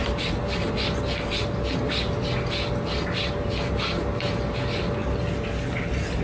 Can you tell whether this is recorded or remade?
recorded